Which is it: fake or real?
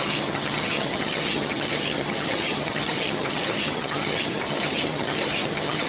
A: fake